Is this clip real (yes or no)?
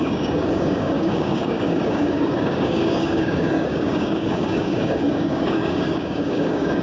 no